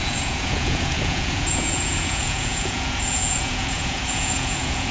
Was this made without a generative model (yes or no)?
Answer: no